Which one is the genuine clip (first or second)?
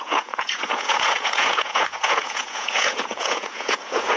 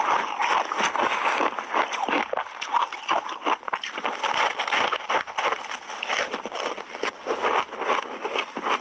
second